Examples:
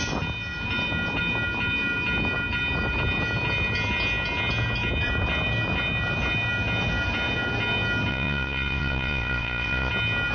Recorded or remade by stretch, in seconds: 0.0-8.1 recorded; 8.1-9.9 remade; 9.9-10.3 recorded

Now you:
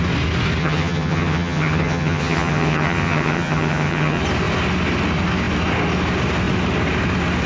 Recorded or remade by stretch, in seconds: 0.0-0.6 recorded; 0.6-4.2 remade; 4.2-7.5 recorded

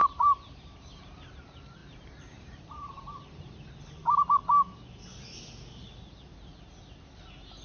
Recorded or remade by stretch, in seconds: 0.0-1.4 remade; 1.4-1.8 recorded; 1.8-3.5 remade; 3.5-7.6 recorded

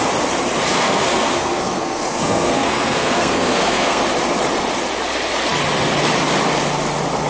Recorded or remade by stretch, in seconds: 0.0-0.7 recorded; 0.7-4.0 remade; 4.0-7.3 recorded